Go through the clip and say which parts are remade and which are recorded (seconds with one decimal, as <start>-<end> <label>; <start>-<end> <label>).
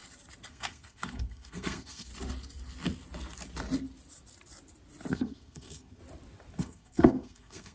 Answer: 0.0-0.5 recorded; 0.5-2.1 remade; 2.1-5.1 recorded; 5.1-6.0 remade; 6.0-6.6 recorded; 6.6-7.7 remade